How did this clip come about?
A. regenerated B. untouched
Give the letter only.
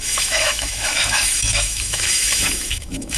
A